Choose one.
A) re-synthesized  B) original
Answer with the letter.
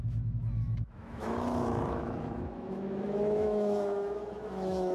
A